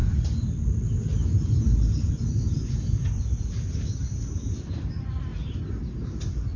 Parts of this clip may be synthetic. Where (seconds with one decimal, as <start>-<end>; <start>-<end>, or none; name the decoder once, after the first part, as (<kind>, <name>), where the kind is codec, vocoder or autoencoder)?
none